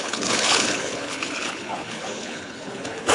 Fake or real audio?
fake